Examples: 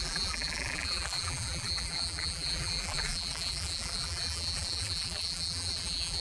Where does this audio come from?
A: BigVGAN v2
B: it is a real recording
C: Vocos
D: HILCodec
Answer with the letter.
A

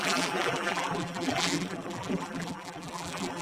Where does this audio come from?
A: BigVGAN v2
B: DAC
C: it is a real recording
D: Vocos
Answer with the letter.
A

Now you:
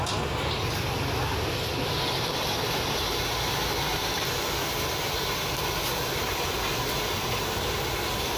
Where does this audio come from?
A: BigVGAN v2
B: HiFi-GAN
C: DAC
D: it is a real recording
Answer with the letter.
D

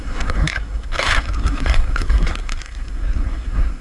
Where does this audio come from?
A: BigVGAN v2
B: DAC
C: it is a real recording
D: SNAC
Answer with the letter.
D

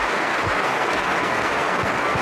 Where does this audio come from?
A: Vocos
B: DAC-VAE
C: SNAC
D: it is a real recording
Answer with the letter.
C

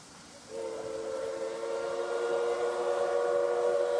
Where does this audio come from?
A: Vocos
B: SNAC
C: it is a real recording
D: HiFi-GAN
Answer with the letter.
C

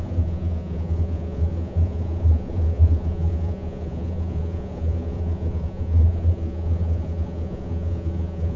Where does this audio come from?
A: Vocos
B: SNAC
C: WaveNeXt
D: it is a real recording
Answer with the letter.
A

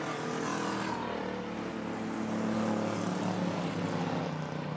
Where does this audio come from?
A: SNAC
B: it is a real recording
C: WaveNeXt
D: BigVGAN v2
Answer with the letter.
B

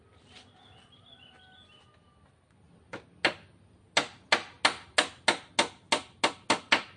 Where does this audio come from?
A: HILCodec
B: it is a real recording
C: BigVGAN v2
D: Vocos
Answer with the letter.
B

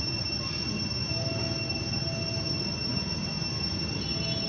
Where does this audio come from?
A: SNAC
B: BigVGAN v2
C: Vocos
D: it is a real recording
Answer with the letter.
D